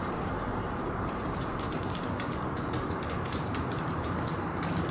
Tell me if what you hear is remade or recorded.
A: remade